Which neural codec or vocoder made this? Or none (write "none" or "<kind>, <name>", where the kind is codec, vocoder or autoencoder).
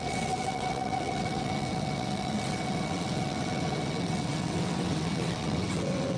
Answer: vocoder, WaveNeXt